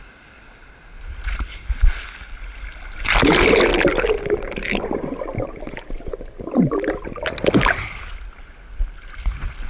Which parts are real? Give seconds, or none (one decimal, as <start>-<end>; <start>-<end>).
0.0-9.7

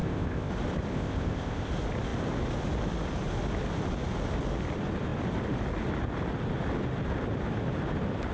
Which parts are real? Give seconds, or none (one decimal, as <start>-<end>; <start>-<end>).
0.5-0.9; 1.7-8.3

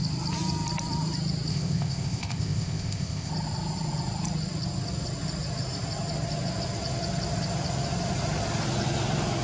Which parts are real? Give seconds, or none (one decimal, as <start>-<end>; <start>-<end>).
0.0-1.5; 3.3-9.4